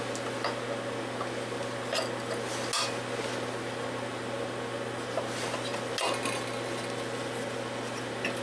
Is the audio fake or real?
real